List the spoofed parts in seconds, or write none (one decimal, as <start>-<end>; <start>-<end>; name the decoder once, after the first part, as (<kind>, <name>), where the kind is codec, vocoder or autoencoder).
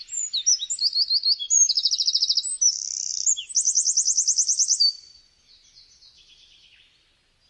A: 1.7-2.4 (vocoder, BigVGAN v2); 3.1-5.2